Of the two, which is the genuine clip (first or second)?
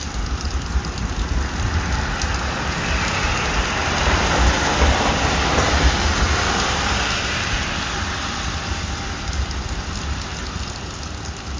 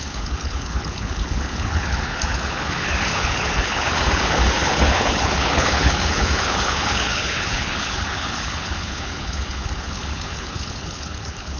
first